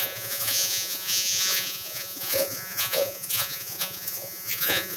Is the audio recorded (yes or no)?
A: no